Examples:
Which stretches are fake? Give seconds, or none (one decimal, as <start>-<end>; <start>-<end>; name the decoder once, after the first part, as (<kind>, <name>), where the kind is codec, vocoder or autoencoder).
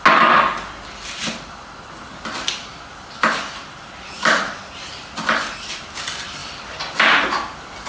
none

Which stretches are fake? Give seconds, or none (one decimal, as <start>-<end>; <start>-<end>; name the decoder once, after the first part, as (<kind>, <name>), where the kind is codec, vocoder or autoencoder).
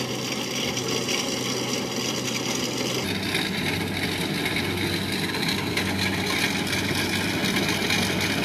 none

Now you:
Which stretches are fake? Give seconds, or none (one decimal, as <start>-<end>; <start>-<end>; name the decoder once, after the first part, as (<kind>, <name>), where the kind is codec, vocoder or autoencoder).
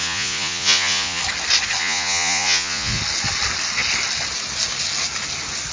0.0-1.2 (vocoder, Vocos); 1.8-3.0